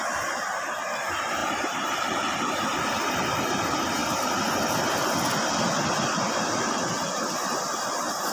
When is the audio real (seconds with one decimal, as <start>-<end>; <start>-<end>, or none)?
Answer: 0.0-1.4; 3.1-4.0; 4.7-8.3